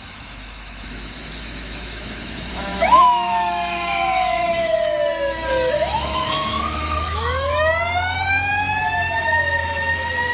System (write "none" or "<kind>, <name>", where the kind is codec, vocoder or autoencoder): autoencoder, DAC-VAE